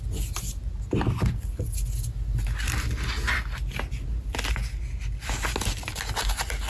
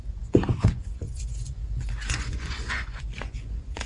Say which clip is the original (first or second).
first